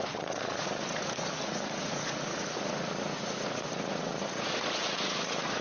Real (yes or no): no